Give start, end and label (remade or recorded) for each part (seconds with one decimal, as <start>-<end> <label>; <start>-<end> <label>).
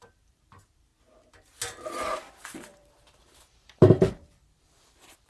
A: 0.0-0.9 remade; 0.9-2.3 recorded; 2.3-5.3 remade